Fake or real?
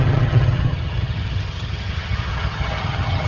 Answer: fake